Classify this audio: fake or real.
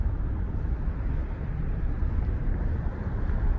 fake